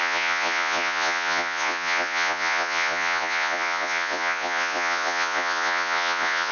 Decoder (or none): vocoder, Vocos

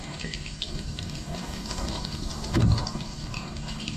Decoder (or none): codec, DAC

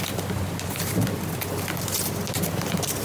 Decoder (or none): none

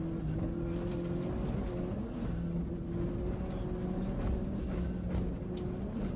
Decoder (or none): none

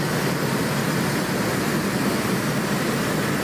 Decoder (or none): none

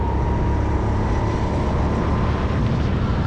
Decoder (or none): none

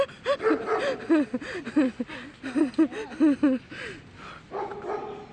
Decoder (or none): none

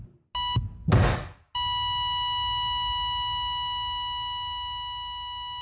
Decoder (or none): none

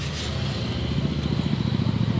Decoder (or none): none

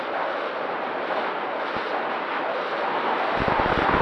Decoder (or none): none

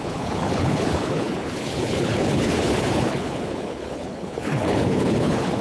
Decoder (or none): codec, HILCodec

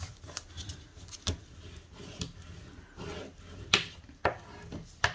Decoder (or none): none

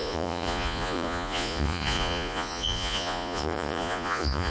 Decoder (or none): vocoder, Vocos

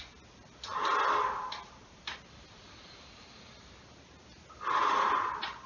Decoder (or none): none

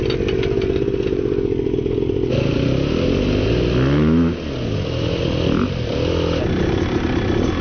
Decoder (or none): none